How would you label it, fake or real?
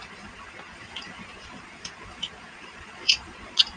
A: fake